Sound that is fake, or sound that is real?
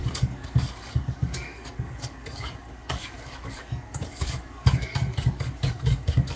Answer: fake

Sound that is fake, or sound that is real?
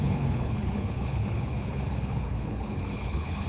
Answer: fake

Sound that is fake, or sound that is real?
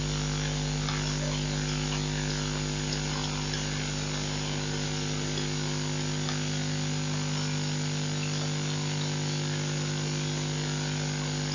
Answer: real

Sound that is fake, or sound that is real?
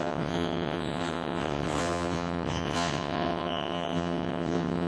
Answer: fake